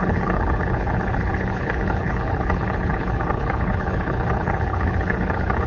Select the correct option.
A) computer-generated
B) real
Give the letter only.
A